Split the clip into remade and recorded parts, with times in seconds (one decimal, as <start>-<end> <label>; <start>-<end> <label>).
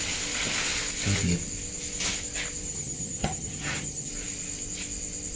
0.0-2.7 recorded; 2.7-4.1 remade; 4.1-5.4 recorded